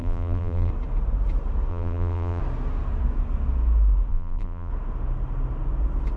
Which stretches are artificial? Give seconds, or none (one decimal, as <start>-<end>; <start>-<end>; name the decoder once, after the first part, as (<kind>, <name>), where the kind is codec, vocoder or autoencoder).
0.0-0.7 (vocoder, BigVGAN v2); 1.7-2.4; 4.1-4.7